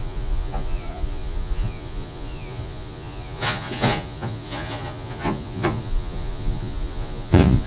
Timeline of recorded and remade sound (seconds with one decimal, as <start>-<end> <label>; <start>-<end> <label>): 0.0-7.7 remade